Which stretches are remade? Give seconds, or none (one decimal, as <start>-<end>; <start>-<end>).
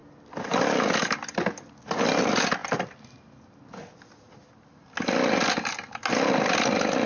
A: none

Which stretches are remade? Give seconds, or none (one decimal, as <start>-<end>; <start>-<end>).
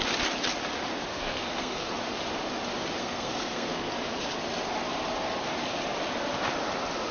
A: 1.1-1.9; 3.0-3.9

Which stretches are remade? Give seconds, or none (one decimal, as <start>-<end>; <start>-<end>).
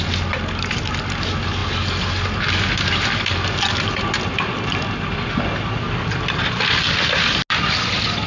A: none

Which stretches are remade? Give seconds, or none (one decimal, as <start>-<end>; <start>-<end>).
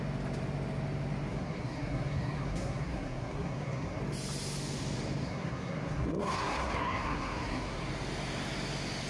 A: 1.3-4.0; 5.2-7.8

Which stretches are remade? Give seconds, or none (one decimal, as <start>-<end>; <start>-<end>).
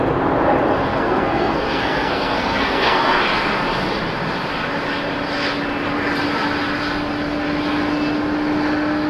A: 0.9-3.2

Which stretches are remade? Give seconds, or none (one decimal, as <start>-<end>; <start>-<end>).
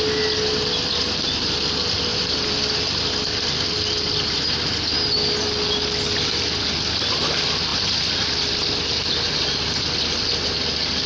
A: 2.1-2.6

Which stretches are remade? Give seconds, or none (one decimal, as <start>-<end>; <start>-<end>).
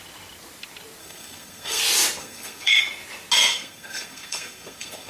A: 1.0-1.8; 2.2-2.8; 3.5-5.1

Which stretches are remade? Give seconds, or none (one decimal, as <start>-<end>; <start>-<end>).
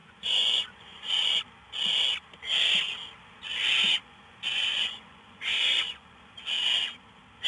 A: 0.0-1.4; 4.0-6.3